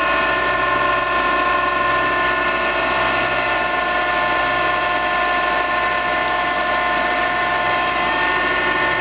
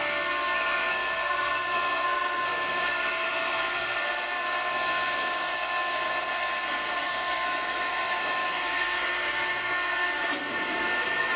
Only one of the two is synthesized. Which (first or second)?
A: second